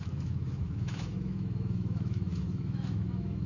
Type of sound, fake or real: fake